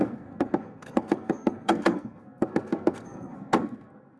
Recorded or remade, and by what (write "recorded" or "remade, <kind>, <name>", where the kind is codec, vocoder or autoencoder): remade, codec, SNAC